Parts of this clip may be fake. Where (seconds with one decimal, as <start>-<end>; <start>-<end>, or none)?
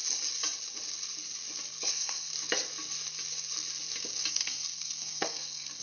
1.9-2.3; 4.3-5.8